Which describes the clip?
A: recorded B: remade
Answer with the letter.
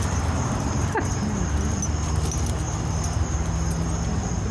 A